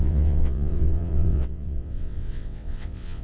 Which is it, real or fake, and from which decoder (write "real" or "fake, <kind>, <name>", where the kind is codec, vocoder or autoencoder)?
fake, vocoder, WaveNeXt